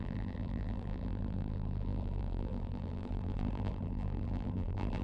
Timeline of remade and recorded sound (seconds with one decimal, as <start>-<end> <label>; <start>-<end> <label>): 0.0-5.0 remade